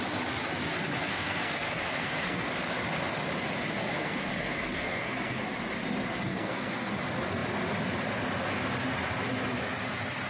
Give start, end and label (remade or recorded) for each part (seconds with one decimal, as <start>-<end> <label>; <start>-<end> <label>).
0.0-1.1 recorded; 1.1-2.5 remade; 2.5-3.8 recorded; 3.8-5.4 remade; 5.4-6.3 recorded; 6.3-6.9 remade; 6.9-10.3 recorded